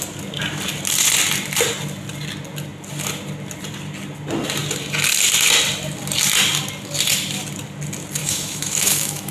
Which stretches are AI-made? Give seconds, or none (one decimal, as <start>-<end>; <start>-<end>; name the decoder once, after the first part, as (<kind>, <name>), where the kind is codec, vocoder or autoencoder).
8.2-9.3 (autoencoder, DAC-VAE)